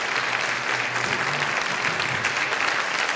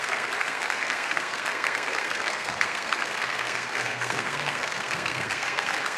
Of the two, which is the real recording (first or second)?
first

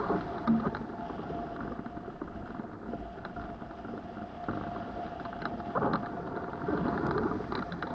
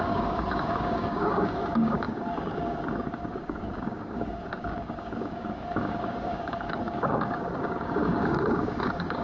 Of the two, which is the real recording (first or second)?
first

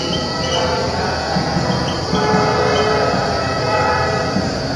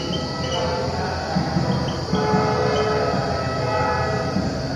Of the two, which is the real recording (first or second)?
second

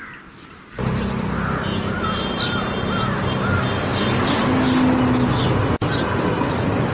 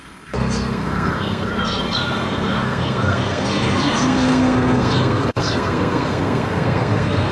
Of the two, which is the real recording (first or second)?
first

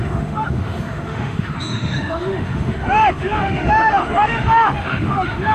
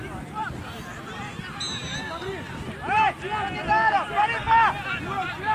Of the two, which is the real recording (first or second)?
second